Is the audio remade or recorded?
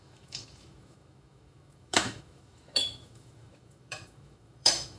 remade